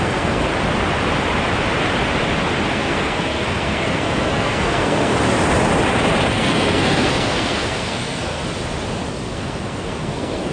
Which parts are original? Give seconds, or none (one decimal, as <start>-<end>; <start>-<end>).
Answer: 0.5-2.7; 5.1-6.3; 8.4-9.1